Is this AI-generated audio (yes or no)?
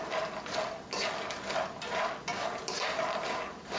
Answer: no